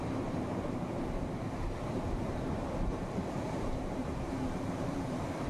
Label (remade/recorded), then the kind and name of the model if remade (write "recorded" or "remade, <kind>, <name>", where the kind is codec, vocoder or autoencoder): remade, vocoder, BigVGAN v2